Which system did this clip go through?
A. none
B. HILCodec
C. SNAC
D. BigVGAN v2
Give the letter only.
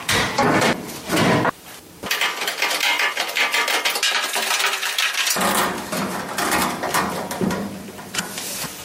D